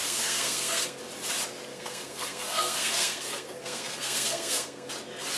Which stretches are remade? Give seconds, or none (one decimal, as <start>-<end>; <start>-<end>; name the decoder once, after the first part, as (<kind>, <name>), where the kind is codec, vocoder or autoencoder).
0.0-1.0 (codec, SNAC); 1.7-4.9